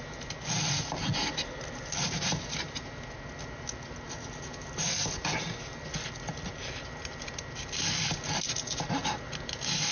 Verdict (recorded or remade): recorded